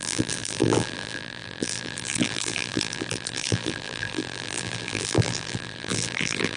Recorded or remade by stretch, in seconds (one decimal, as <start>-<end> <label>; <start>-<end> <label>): 0.0-6.6 remade